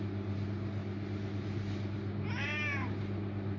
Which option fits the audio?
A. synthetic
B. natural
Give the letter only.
B